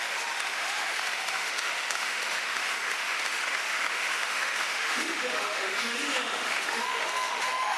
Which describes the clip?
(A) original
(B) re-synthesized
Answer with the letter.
B